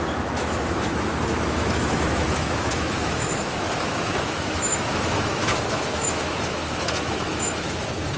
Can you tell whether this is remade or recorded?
remade